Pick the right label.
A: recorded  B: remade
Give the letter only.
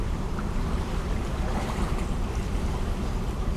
B